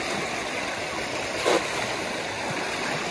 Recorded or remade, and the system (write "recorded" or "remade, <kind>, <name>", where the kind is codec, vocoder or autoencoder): recorded